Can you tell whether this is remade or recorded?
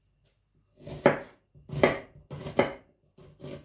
recorded